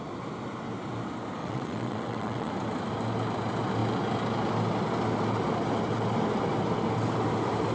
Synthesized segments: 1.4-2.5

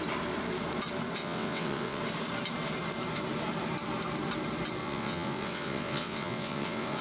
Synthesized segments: 1.2-2.0; 4.8-7.0

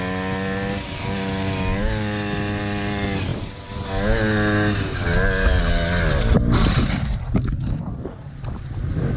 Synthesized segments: none

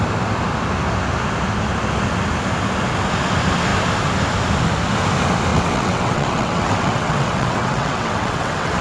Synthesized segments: 5.5-8.8